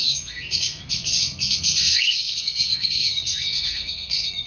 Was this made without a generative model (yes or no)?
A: no